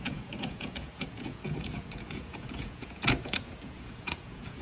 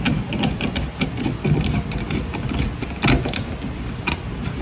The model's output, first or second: first